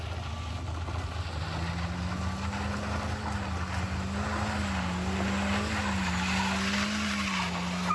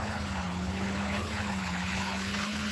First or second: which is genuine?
first